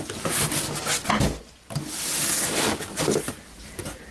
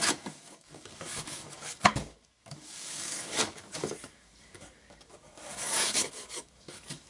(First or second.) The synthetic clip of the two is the second